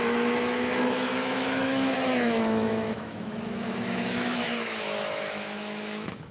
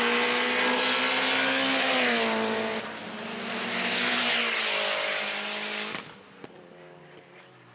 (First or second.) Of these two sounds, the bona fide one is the second